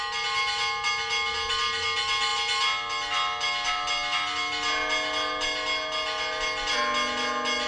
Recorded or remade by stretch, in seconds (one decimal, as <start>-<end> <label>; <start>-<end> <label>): 0.0-7.7 recorded